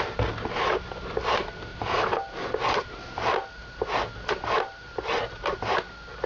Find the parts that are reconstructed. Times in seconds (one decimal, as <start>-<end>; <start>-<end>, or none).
none